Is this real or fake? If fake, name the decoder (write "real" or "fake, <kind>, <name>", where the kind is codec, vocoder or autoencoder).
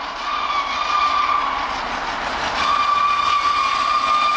real